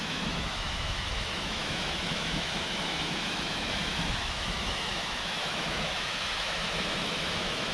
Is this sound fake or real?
fake